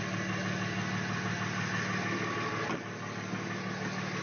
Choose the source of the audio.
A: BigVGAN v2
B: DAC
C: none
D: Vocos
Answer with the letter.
C